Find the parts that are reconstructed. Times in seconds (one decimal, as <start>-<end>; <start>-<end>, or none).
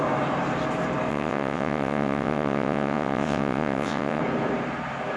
1.1-4.2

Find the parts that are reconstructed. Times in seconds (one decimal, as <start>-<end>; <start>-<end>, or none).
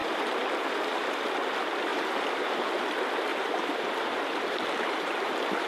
0.0-1.2; 1.9-2.7; 3.3-5.7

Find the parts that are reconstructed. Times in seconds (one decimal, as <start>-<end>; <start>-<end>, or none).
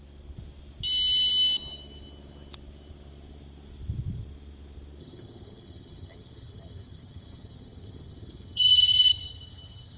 5.0-10.0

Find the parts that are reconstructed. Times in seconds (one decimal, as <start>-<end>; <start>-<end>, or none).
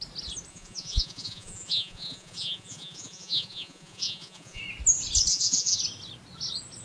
0.5-4.6; 5.3-5.8